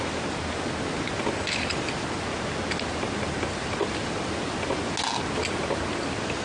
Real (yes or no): yes